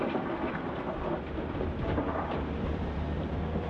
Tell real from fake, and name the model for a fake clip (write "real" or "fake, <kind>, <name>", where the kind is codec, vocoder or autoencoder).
fake, vocoder, BigVGAN v2